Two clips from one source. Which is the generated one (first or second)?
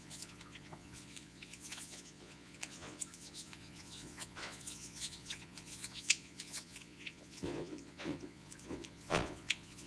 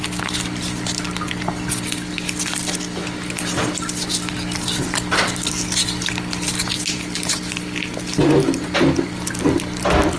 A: first